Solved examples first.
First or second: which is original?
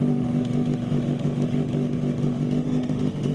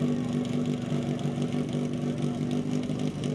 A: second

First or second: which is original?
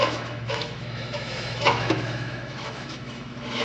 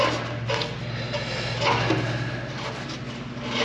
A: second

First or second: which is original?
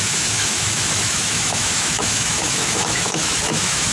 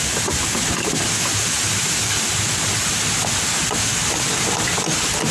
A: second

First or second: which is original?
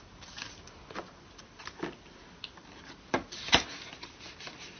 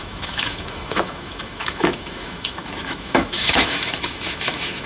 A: first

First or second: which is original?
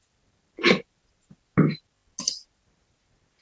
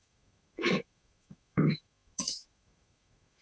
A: first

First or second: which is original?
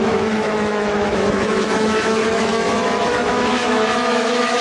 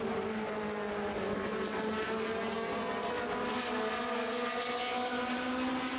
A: second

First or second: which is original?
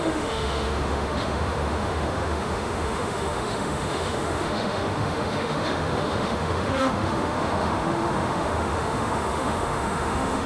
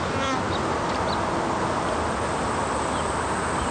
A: second